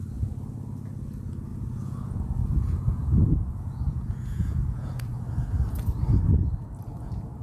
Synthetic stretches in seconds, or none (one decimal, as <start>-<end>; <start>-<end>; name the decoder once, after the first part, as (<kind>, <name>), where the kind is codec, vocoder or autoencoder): 1.5-5.2 (vocoder, Vocos)